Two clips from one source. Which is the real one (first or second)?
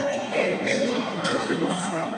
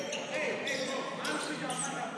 second